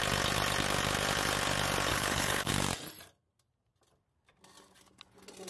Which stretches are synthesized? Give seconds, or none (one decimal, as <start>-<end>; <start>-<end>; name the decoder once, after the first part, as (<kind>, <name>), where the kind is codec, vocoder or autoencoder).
1.9-2.5 (codec, HILCodec)